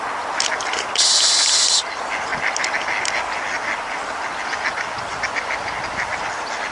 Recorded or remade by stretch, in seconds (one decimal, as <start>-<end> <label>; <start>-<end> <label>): 0.0-6.7 recorded